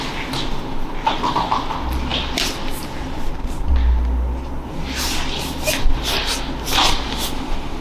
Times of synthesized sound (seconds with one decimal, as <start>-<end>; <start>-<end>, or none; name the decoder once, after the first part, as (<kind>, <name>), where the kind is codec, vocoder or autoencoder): 7.1-7.8 (autoencoder, DAC-VAE)